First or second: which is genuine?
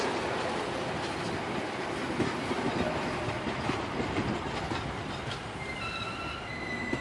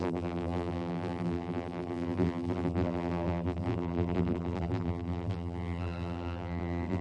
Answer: first